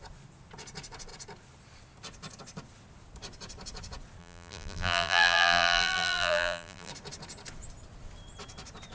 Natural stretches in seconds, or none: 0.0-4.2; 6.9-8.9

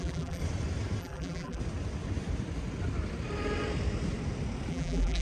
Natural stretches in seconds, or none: 0.4-1.0; 1.6-4.7